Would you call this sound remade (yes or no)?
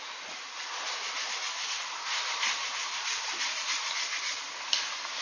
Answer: no